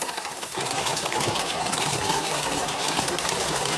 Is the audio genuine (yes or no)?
no